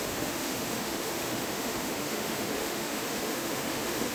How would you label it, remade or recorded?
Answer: remade